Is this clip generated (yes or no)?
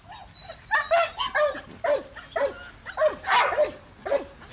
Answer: no